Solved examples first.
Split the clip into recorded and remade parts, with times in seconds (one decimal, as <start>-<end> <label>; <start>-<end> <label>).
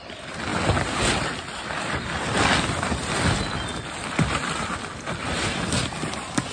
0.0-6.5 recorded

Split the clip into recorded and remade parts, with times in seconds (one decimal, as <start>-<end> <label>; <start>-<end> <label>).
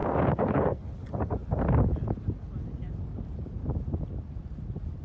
0.0-0.8 remade; 0.8-5.0 recorded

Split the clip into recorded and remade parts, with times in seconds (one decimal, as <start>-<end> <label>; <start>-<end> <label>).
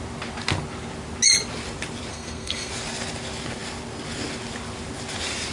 0.0-2.1 recorded; 2.1-2.7 remade; 2.7-5.5 recorded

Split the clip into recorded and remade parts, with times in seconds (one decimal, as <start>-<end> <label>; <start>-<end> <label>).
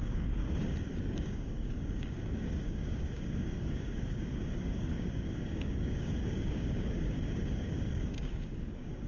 0.0-0.4 remade; 0.4-1.0 recorded; 1.0-9.1 remade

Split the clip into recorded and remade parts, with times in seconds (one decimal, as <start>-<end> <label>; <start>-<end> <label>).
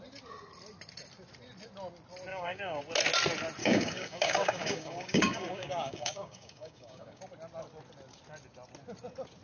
0.0-2.3 recorded; 2.3-2.8 remade; 2.8-3.6 recorded; 3.6-7.2 remade; 7.2-9.4 recorded